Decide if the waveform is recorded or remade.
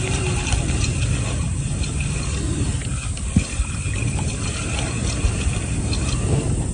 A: recorded